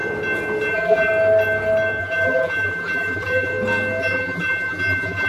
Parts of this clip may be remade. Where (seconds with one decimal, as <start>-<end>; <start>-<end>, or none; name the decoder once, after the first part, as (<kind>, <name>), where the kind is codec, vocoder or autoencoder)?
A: 0.7-1.1 (vocoder, BigVGAN v2); 2.0-3.5; 4.0-5.3